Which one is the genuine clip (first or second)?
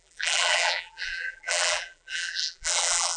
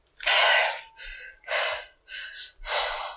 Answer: second